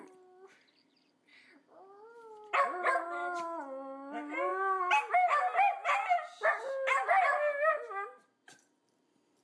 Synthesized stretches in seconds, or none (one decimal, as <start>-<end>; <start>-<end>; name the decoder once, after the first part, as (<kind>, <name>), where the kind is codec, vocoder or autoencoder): none